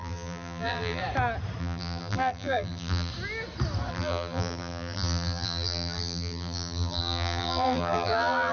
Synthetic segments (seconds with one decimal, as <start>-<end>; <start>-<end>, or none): 0.0-1.0; 1.6-3.1; 3.9-8.5